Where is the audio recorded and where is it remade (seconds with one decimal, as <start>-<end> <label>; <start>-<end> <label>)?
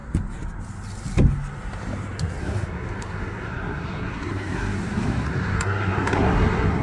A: 0.0-2.4 recorded; 2.4-6.8 remade